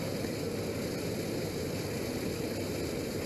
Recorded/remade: recorded